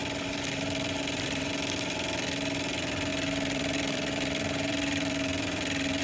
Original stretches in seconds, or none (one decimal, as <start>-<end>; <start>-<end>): 1.5-3.1